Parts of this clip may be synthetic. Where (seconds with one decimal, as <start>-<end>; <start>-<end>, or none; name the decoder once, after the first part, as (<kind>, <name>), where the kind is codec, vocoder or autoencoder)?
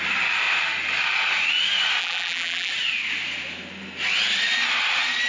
2.0-2.7 (vocoder, BigVGAN v2)